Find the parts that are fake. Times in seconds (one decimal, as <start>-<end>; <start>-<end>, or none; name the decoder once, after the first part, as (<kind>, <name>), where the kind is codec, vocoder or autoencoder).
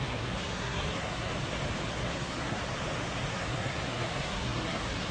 0.0-1.3 (codec, SNAC); 1.9-2.6; 3.3-5.1